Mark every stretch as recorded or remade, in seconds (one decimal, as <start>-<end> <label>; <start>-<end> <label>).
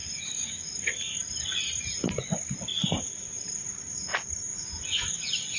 0.0-4.5 recorded; 4.5-5.6 remade